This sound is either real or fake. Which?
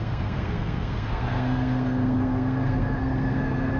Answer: fake